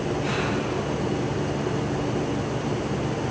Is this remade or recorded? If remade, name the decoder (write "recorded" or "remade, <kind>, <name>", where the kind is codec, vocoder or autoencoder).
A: recorded